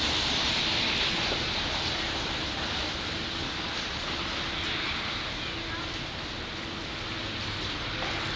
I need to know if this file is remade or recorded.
recorded